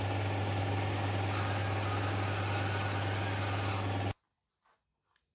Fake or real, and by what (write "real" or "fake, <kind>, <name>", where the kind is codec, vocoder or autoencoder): real